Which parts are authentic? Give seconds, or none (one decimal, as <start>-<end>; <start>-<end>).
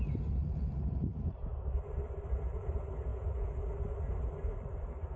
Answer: 3.1-4.7